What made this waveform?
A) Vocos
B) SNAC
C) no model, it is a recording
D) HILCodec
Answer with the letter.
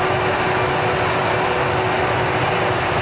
C